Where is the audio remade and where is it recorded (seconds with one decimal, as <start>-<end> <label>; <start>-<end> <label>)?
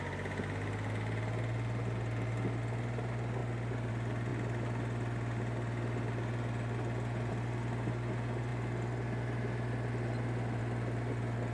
0.0-11.5 recorded